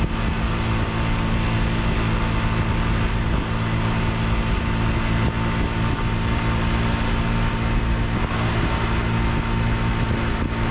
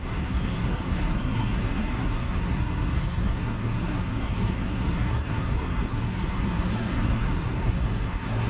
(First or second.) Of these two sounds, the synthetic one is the second